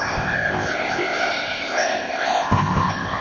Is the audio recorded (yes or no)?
no